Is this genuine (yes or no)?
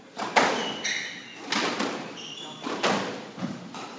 yes